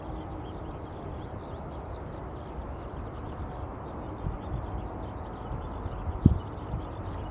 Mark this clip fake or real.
real